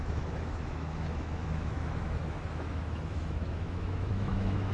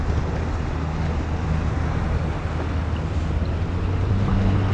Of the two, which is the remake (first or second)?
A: first